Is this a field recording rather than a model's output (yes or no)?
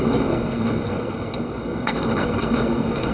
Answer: no